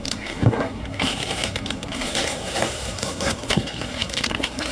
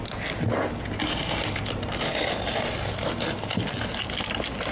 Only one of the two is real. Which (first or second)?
second